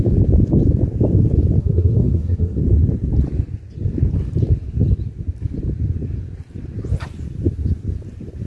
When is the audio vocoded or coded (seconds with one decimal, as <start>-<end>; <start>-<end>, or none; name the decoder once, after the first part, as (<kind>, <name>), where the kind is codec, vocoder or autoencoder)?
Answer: 1.6-2.6 (codec, SNAC)